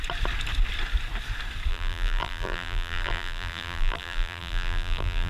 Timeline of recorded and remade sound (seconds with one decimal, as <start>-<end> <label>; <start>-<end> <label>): 0.0-1.7 recorded; 1.7-5.3 remade